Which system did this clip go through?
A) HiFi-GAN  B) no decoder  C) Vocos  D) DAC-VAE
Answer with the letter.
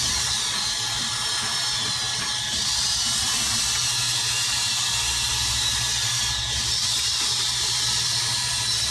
B